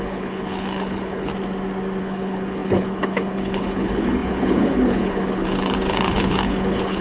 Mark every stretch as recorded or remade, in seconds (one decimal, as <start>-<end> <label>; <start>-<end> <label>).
0.0-1.3 remade; 1.3-2.0 recorded; 2.0-7.0 remade